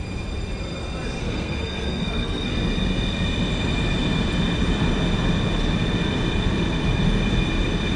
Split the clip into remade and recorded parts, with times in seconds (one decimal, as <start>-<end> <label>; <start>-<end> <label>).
0.0-1.2 recorded; 1.2-2.5 remade; 2.5-8.0 recorded